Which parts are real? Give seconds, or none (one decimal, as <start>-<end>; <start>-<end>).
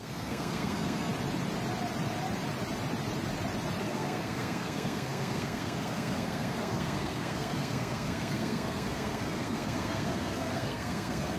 1.1-3.8